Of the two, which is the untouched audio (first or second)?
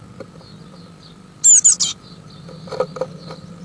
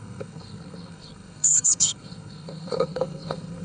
first